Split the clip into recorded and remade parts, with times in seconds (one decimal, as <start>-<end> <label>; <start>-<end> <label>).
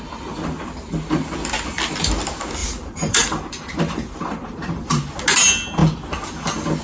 0.0-2.6 recorded; 2.6-4.9 remade; 4.9-6.8 recorded